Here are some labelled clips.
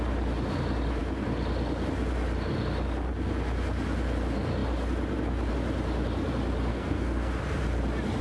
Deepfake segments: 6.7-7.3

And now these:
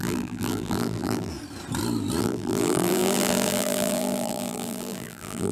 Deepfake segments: 0.0-1.3; 2.2-5.5